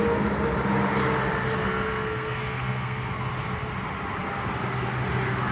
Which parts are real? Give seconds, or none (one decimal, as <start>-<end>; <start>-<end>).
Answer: 0.0-1.6; 3.3-5.5